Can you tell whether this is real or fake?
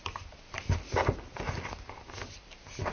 real